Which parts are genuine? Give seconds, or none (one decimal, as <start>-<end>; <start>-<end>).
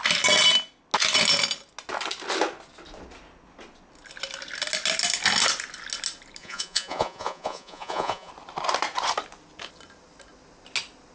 0.0-6.4; 8.3-11.1